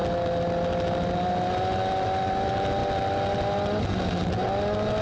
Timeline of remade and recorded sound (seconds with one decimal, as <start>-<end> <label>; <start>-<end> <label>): 0.0-5.0 recorded